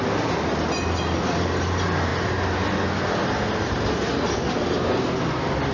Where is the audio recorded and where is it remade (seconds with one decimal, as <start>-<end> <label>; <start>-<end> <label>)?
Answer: 0.0-5.7 recorded